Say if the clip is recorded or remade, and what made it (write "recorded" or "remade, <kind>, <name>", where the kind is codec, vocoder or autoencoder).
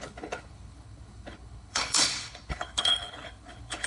remade, codec, HILCodec